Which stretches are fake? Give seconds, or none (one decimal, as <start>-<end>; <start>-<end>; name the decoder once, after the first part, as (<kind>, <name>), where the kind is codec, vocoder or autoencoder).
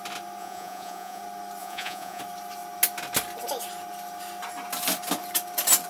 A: 0.4-1.2 (vocoder, Vocos); 1.6-2.2